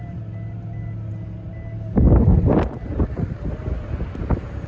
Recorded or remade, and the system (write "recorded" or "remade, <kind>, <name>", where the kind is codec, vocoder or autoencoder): recorded